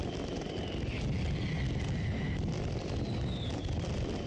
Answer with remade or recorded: recorded